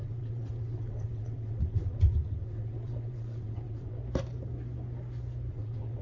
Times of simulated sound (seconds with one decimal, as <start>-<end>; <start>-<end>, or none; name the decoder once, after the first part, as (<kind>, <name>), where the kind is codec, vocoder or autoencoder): 0.0-4.0 (vocoder, WaveNeXt); 5.5-6.0